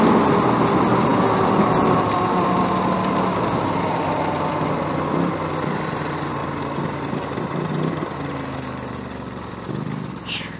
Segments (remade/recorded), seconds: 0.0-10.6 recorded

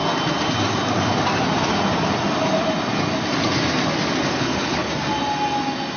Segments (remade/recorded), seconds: 0.0-4.3 recorded; 4.3-4.9 remade; 4.9-6.0 recorded

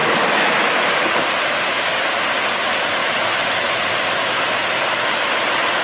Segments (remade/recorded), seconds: 0.0-0.9 remade; 0.9-1.5 recorded; 1.5-2.1 remade; 2.1-3.0 recorded; 3.0-3.9 remade; 3.9-5.8 recorded